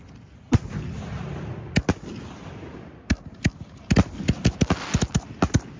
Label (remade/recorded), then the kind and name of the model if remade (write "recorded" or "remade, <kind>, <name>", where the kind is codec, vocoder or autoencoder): recorded